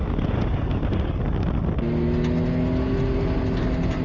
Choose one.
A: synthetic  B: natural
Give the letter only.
B